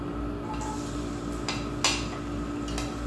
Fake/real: real